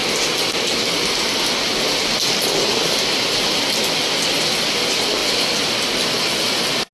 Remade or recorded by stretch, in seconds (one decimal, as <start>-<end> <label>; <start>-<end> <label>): 0.0-6.9 recorded